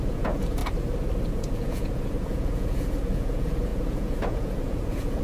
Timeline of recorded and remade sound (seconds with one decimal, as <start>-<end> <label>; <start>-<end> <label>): 0.0-0.6 remade; 0.6-1.3 recorded; 1.3-5.2 remade